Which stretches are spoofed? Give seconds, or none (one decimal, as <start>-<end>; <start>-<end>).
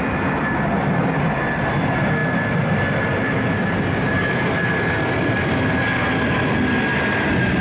none